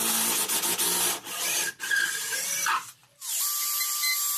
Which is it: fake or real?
real